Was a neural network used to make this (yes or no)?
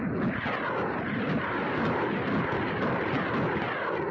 no